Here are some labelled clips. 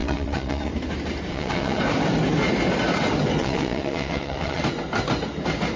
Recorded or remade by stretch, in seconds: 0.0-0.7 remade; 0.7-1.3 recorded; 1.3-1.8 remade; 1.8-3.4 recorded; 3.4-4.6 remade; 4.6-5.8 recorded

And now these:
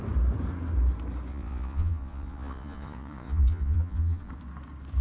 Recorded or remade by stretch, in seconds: 0.0-1.3 recorded; 1.3-4.3 remade; 4.3-5.0 recorded